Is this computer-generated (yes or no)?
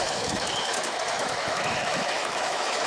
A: yes